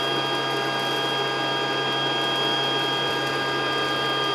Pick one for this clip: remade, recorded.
recorded